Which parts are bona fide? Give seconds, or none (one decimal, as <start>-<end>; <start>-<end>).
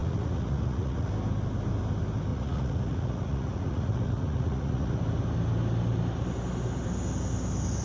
1.1-2.3; 5.0-7.8